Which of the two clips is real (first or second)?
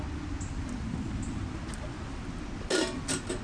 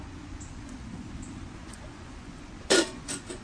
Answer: first